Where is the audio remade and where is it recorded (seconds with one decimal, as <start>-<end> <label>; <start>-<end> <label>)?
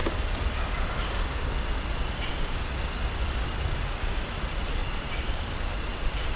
0.0-4.8 recorded; 4.8-6.4 remade